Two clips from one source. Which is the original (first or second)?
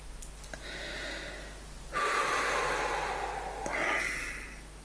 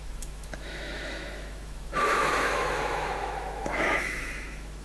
first